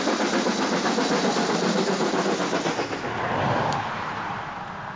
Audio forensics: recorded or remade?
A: recorded